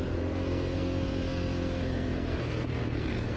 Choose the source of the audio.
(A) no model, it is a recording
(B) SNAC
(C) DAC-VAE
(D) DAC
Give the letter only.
B